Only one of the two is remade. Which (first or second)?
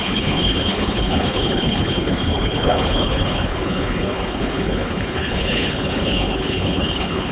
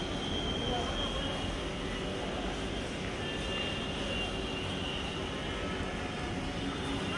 first